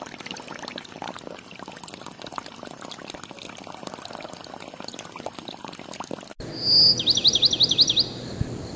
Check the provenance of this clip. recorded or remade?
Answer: recorded